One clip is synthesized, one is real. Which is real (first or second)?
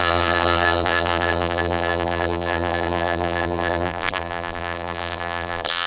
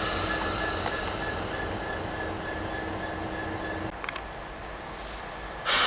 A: second